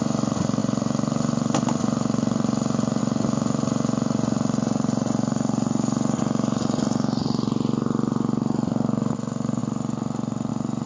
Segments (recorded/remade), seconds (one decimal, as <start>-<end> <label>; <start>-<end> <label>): 0.0-10.9 recorded

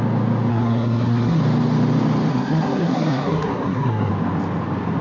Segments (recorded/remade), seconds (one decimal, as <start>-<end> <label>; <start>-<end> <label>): 0.0-0.5 recorded; 0.5-1.4 remade; 1.4-2.3 recorded; 2.3-4.1 remade; 4.1-5.0 recorded